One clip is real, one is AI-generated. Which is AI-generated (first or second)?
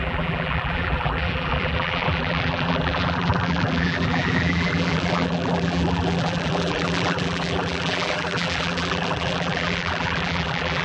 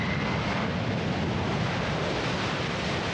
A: first